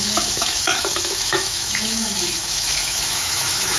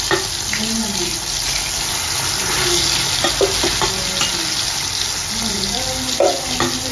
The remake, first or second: first